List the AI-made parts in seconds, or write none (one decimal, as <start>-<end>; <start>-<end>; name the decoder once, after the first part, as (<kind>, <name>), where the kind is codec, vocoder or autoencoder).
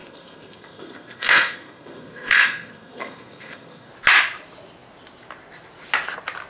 0.0-3.9 (codec, SNAC)